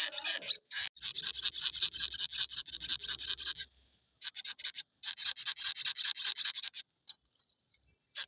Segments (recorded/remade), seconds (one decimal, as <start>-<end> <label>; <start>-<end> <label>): 0.0-8.3 recorded